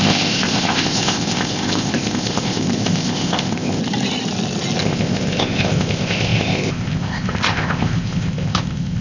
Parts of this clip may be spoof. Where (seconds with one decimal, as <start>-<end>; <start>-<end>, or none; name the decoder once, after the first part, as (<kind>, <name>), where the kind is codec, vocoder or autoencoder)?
0.0-3.8 (codec, ZipCodec); 4.8-9.0